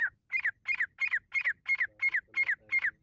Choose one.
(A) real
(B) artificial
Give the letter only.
A